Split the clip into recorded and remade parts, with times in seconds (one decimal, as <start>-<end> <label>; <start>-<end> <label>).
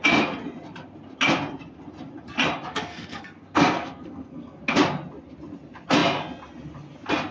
0.0-2.7 recorded; 2.7-4.6 remade; 4.6-7.3 recorded